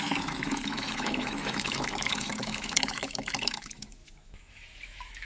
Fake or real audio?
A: fake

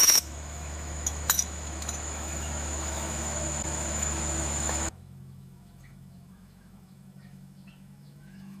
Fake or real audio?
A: fake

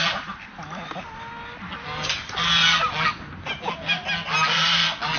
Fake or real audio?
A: real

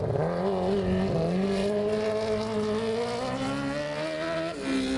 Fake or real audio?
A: real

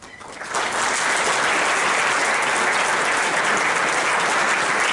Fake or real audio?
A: real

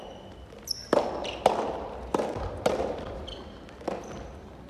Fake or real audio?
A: real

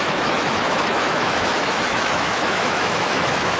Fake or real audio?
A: fake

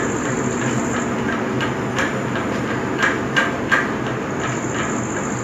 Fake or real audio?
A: real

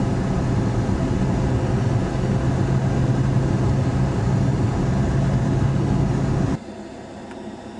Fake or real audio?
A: real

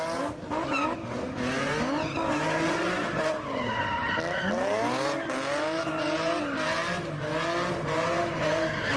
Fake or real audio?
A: real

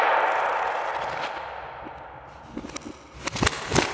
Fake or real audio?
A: real